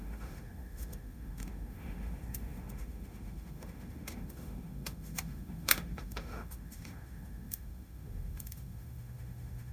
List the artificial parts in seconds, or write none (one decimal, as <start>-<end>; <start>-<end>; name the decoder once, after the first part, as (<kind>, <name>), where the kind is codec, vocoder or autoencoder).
0.0-9.7 (autoencoder, DAC-VAE)